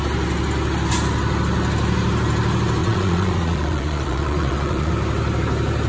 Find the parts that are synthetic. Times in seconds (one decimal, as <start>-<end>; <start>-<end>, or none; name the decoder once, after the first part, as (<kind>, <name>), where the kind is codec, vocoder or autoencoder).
2.8-4.9 (vocoder, Vocos)